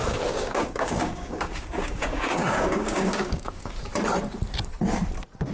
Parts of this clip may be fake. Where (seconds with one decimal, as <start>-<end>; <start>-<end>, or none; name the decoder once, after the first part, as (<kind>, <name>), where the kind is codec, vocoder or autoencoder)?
0.0-3.9 (codec, DAC)